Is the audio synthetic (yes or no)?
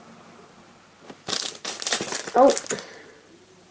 no